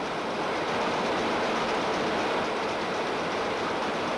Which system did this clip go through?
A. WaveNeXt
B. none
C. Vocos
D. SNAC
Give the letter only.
B